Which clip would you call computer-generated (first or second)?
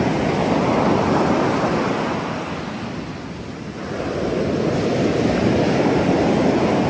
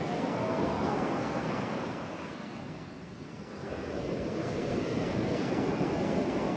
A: second